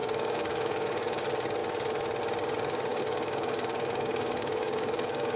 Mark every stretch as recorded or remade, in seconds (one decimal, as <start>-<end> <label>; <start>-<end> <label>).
0.0-1.2 remade; 1.2-2.9 recorded; 2.9-5.4 remade